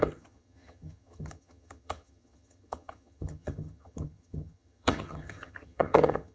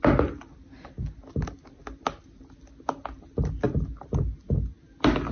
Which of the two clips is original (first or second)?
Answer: second